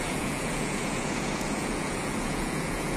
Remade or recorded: remade